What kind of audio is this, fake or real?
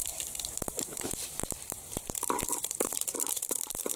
fake